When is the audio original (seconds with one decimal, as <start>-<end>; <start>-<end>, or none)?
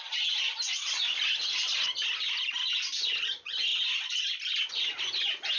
0.0-5.6